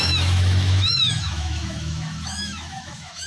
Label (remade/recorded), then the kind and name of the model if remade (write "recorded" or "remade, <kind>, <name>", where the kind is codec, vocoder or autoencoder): remade, autoencoder, DAC-VAE